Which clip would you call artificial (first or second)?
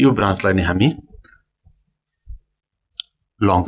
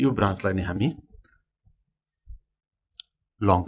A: second